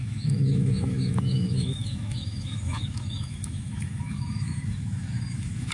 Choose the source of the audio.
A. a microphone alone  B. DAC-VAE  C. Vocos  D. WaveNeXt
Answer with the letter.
B